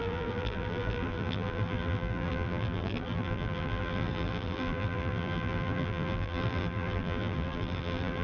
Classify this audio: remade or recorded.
remade